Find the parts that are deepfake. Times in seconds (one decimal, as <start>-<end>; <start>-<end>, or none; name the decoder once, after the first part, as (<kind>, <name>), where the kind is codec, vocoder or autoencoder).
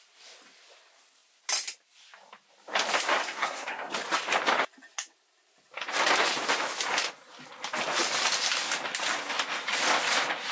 3.2-3.9 (codec, SNAC)